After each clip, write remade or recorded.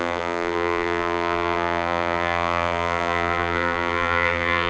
remade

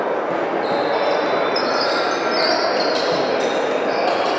recorded